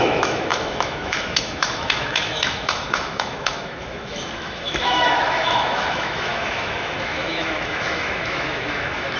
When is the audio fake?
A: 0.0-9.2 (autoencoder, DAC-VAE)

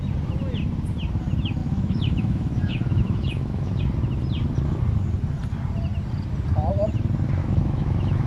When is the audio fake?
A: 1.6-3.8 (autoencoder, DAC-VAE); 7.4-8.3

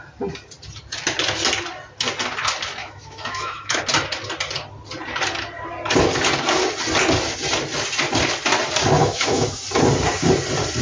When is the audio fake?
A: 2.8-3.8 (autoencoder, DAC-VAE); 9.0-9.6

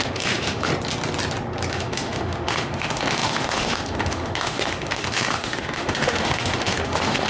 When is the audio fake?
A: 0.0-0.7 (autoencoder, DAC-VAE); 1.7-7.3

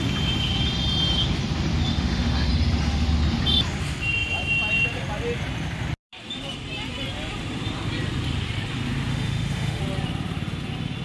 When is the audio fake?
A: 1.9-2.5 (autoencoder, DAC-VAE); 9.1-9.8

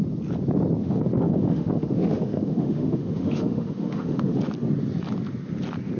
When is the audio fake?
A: 0.8-4.4 (autoencoder, DAC-VAE)

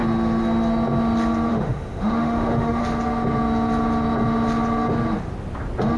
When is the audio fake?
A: 1.5-2.8 (autoencoder, DAC-VAE)